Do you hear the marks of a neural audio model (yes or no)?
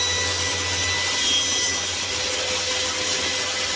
no